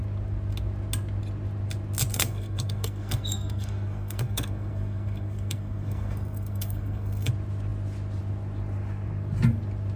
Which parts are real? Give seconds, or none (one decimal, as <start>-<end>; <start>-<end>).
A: 0.0-2.1; 7.3-10.0